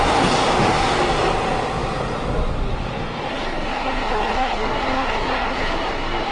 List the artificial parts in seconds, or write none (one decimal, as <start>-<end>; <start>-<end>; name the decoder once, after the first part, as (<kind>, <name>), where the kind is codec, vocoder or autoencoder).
3.3-6.3 (codec, SNAC)